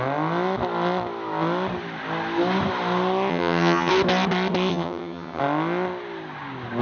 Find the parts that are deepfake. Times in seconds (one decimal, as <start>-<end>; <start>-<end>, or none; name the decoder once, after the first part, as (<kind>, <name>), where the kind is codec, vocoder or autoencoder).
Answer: 3.3-3.9 (vocoder, HiFi-GAN); 4.7-5.4